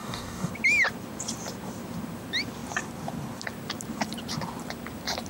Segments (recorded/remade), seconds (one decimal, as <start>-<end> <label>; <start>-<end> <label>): 0.0-0.5 remade; 0.5-5.3 recorded